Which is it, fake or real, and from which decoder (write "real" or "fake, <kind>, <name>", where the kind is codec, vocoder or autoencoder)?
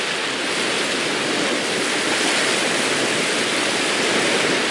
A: real